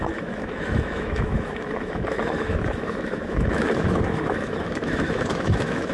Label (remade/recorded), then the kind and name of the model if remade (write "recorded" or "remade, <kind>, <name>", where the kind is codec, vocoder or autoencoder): remade, autoencoder, DAC-VAE